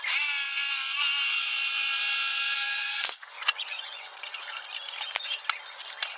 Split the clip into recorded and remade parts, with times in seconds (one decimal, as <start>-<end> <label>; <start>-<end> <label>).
0.0-2.3 recorded; 2.3-4.4 remade; 4.4-6.2 recorded